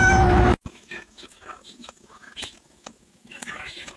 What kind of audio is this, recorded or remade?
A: remade